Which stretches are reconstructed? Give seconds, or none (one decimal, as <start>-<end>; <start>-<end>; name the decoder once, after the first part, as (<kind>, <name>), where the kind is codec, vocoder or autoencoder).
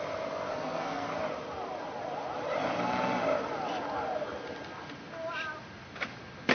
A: 0.5-1.1 (codec, SNAC)